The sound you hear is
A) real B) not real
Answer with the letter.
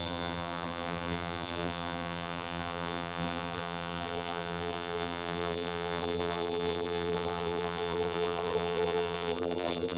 B